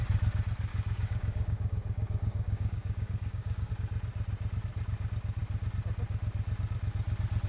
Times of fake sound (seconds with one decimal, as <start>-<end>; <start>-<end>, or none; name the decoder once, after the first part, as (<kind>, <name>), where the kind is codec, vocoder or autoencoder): 0.7-3.7 (codec, DAC)